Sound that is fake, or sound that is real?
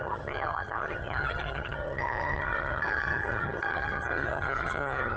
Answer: fake